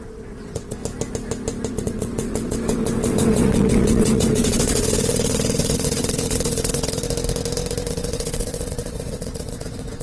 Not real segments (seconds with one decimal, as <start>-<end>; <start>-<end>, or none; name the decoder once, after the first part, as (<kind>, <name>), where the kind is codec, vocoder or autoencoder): 0.0-0.8 (vocoder, WaveNeXt); 1.7-7.0; 7.9-10.0